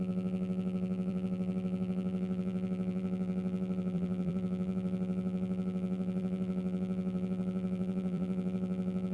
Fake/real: fake